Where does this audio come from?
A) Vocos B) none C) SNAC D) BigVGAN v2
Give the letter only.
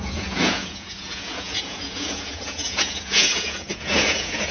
A